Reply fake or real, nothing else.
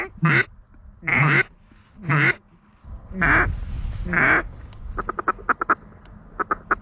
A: real